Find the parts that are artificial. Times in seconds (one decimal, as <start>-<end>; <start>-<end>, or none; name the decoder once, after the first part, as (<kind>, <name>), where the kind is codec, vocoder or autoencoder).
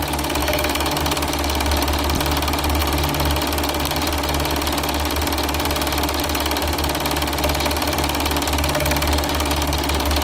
0.4-1.0 (autoencoder, DAC-VAE)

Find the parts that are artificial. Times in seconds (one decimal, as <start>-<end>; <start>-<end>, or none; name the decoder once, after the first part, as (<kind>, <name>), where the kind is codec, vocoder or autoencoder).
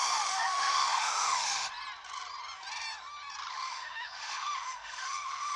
0.0-1.7 (autoencoder, DAC-VAE); 3.5-5.6